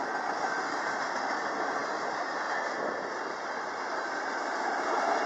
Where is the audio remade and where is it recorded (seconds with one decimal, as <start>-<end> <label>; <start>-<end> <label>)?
0.0-5.3 recorded